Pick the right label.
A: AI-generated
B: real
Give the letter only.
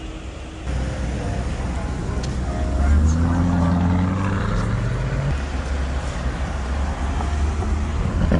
B